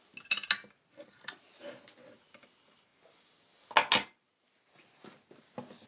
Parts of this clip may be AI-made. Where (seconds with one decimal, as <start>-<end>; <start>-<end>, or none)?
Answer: none

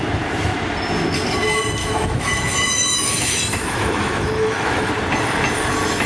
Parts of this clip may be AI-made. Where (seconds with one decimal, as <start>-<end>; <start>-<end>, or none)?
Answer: 1.8-4.9

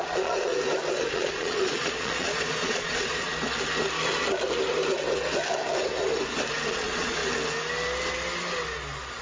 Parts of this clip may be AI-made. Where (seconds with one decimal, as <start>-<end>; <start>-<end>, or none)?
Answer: 0.0-0.5; 1.1-3.3; 6.7-7.2

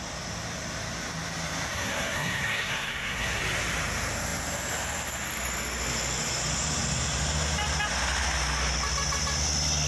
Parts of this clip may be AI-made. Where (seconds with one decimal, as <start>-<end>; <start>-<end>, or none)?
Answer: 1.7-3.4

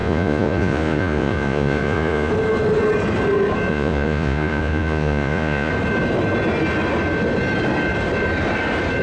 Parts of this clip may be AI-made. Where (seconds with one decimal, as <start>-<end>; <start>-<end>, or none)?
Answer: 0.0-2.3; 3.7-5.7